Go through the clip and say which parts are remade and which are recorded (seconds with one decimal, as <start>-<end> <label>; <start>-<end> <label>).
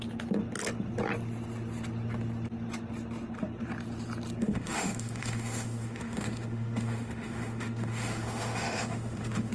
0.0-4.4 recorded; 4.4-9.5 remade